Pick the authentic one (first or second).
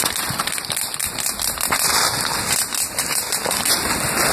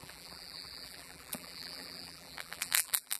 first